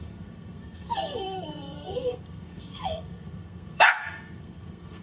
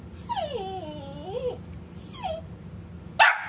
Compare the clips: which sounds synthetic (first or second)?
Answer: first